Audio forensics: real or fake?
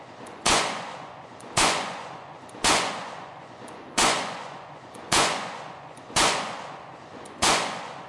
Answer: fake